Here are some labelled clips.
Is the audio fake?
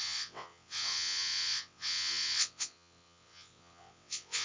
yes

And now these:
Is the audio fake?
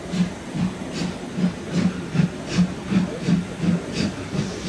no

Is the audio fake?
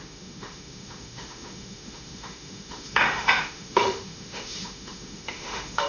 yes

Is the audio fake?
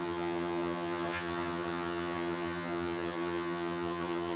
yes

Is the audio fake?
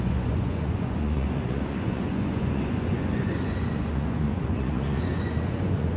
yes